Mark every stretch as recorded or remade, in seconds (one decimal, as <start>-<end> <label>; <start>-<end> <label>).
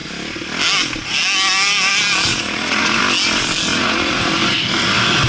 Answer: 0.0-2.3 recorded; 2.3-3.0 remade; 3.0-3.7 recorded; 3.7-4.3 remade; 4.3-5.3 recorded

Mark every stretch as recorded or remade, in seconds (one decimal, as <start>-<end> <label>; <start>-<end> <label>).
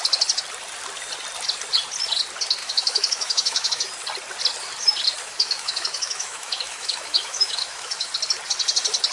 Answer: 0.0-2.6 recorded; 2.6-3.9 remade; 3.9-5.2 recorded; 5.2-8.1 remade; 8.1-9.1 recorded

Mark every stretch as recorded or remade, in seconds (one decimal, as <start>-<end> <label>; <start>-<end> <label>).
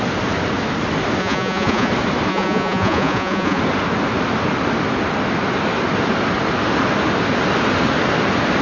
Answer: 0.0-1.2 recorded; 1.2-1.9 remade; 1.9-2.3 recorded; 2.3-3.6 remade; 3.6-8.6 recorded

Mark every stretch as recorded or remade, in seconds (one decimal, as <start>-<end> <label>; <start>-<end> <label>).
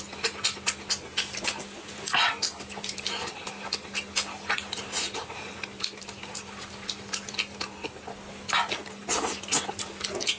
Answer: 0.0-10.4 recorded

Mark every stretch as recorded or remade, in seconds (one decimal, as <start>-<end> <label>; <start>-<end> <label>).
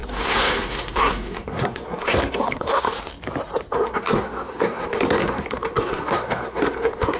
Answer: 0.0-3.1 remade; 3.1-3.7 recorded; 3.7-7.2 remade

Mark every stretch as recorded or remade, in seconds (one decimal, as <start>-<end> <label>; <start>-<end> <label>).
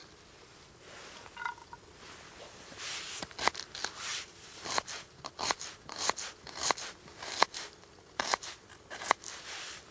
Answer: 0.0-0.7 remade; 0.7-1.6 recorded; 1.6-3.0 remade; 3.0-4.1 recorded; 4.1-8.4 remade; 8.4-9.9 recorded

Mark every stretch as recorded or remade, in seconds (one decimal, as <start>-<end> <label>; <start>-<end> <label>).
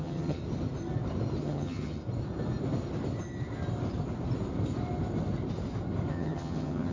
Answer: 0.0-0.4 remade; 0.4-1.4 recorded; 1.4-2.0 remade; 2.0-6.1 recorded; 6.1-6.9 remade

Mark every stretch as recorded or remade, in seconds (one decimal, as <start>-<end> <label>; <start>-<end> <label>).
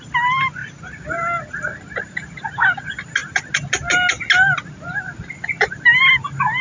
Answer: 0.0-6.6 recorded